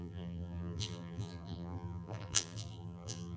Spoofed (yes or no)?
yes